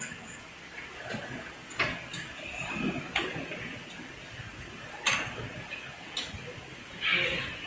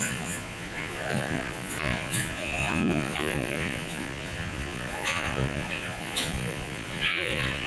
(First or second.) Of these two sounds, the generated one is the second